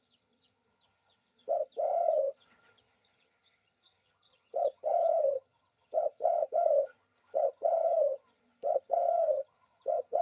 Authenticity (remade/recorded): remade